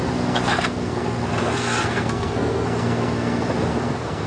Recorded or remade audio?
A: remade